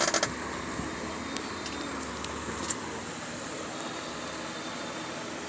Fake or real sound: real